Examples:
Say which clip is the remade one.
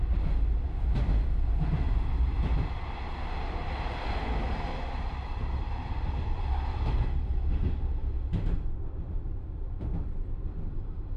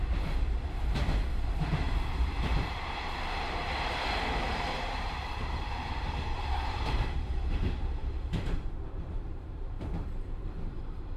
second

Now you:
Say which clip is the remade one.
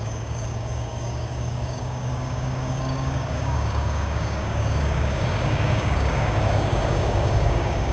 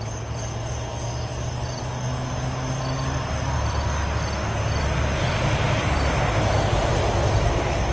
first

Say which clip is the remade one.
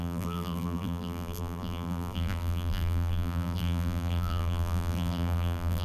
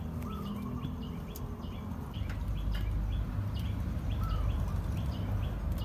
first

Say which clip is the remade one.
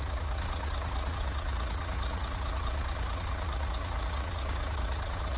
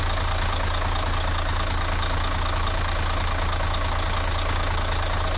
first